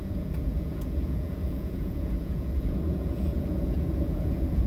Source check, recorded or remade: remade